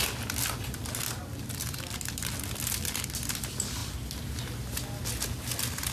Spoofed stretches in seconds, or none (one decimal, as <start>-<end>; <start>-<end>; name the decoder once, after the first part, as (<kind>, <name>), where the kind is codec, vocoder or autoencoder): none